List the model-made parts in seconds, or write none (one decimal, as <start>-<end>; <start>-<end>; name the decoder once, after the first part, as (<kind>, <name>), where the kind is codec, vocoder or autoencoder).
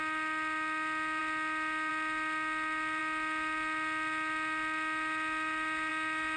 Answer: none